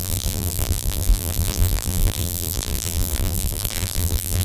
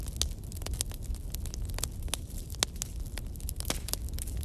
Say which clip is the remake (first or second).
first